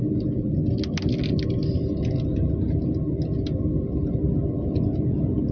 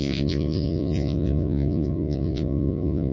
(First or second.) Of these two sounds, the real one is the first